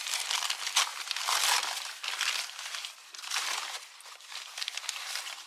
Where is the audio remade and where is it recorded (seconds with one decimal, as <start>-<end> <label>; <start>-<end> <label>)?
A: 0.0-5.5 recorded

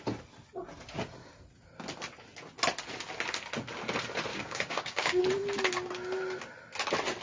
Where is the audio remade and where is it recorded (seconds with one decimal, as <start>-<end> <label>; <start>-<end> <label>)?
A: 0.0-4.3 recorded; 4.3-5.2 remade; 5.2-7.2 recorded

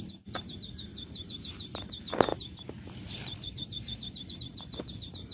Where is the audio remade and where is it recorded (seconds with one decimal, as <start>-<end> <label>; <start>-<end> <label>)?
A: 0.0-5.3 recorded